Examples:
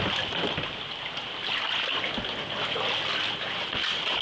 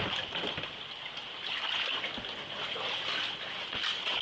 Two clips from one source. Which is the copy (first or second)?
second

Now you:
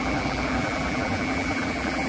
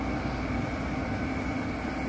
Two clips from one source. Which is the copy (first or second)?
first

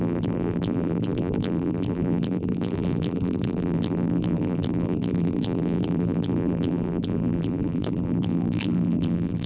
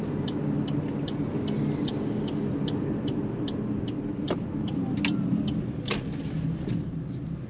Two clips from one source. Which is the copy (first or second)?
first